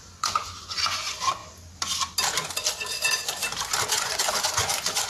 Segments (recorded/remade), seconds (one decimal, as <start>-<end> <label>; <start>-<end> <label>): 0.0-1.4 remade; 1.4-3.9 recorded; 3.9-5.1 remade